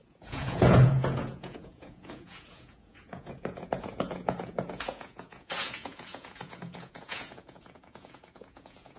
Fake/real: fake